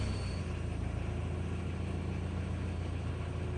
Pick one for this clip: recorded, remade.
recorded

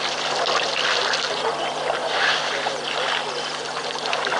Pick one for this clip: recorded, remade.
recorded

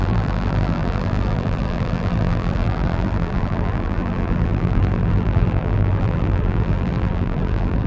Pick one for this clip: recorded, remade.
remade